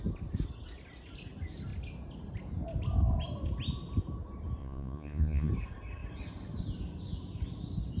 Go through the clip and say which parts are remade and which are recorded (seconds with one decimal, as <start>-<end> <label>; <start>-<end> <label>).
0.0-4.6 recorded; 4.6-5.5 remade; 5.5-8.0 recorded